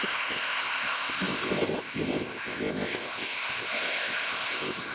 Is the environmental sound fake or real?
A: fake